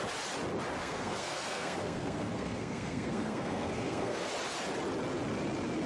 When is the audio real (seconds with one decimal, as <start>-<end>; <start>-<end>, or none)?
0.0-0.8; 4.3-5.9